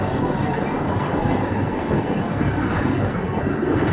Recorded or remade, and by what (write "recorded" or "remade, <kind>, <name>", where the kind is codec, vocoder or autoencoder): remade, codec, SNAC